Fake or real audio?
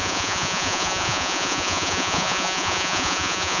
fake